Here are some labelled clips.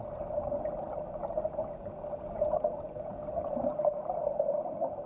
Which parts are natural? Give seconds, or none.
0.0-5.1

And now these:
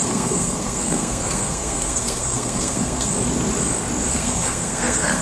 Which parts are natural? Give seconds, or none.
3.1-4.1

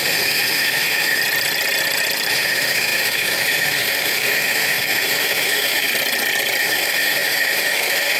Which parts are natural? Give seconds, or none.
1.2-2.3; 5.9-6.6

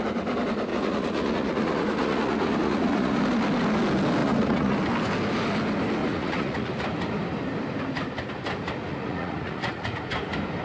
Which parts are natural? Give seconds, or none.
0.0-0.7; 3.2-4.2; 4.8-6.0; 6.7-8.9; 10.0-10.6